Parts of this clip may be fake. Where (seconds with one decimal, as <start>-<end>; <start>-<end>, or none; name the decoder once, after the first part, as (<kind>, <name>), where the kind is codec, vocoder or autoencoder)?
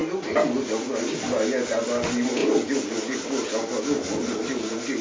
none